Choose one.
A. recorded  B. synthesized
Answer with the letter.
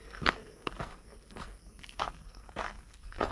B